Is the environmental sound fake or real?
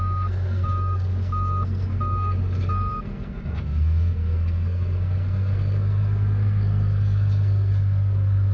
fake